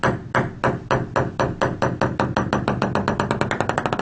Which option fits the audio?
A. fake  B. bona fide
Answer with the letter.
B